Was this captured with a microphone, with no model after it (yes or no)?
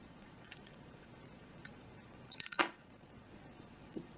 no